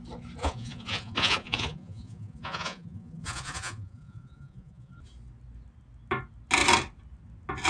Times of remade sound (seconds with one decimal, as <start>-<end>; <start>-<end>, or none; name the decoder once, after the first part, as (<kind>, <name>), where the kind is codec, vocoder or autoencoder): 0.4-4.9 (vocoder, Vocos)